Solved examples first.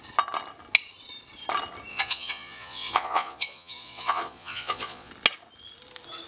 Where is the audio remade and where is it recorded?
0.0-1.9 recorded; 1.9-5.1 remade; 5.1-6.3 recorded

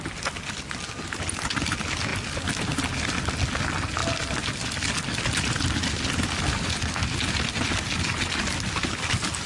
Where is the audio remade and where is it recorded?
0.0-9.5 recorded

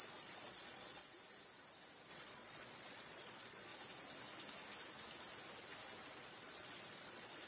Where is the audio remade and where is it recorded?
0.0-1.0 remade; 1.0-2.1 recorded; 2.1-3.7 remade; 3.7-6.2 recorded; 6.2-7.5 remade